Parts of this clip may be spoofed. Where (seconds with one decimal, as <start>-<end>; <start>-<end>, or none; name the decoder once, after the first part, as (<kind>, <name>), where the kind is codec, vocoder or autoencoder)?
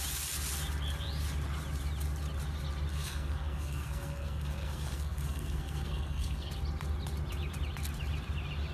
2.9-6.5 (codec, SNAC)